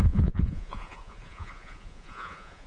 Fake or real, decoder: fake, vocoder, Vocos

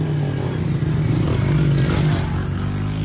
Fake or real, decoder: real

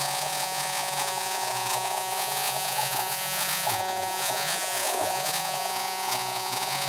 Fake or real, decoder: fake, vocoder, Vocos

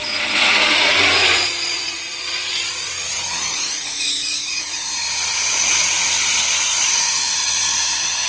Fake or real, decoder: fake, vocoder, Vocos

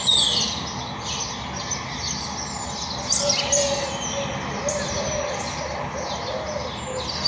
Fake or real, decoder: real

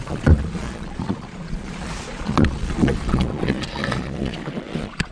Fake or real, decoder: fake, vocoder, Vocos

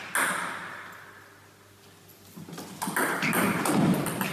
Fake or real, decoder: real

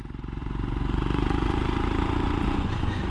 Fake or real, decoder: fake, vocoder, Vocos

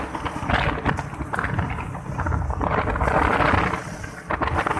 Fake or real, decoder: real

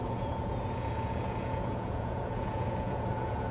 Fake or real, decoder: fake, vocoder, Vocos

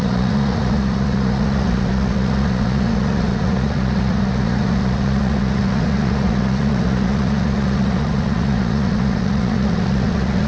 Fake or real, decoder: fake, vocoder, Vocos